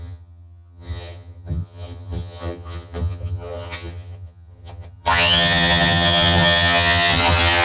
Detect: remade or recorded remade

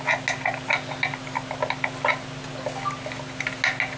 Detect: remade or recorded recorded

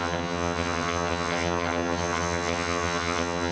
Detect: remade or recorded remade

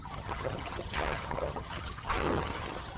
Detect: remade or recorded remade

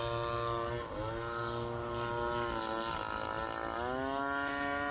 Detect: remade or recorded recorded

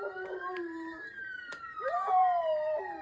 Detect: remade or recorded recorded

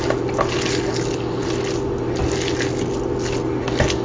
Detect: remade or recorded recorded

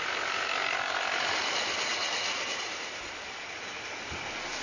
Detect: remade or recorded recorded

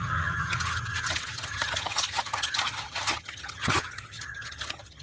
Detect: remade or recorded remade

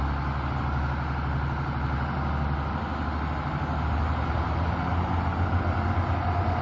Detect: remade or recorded recorded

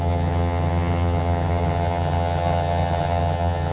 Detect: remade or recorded remade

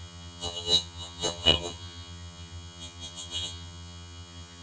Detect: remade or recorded remade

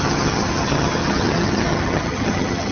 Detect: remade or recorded remade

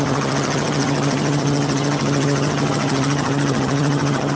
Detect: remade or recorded remade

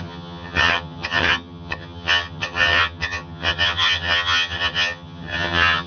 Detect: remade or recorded remade